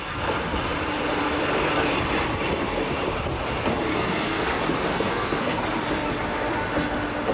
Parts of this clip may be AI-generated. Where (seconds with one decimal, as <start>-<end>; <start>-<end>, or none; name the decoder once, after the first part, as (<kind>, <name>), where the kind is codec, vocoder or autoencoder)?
3.9-4.5 (codec, SNAC); 4.9-5.6